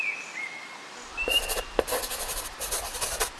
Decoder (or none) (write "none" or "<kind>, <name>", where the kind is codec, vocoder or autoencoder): none